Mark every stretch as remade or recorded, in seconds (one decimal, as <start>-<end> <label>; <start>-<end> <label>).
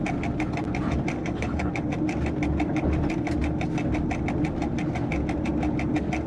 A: 0.0-1.2 recorded; 1.2-1.7 remade; 1.7-6.3 recorded